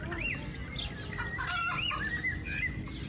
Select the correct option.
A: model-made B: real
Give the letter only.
B